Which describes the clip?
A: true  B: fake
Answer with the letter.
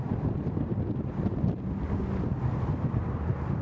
A